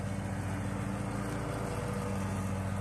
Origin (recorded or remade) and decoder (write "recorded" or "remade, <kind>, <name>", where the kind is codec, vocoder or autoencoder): recorded